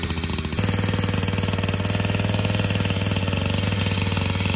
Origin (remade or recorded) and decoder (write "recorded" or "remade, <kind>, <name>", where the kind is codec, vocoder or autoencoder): recorded